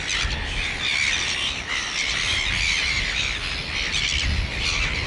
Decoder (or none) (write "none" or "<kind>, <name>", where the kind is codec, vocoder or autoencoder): none